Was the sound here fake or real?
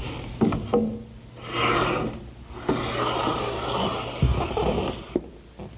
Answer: real